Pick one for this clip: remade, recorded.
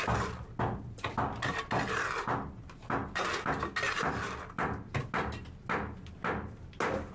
recorded